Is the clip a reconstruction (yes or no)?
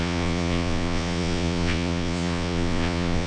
yes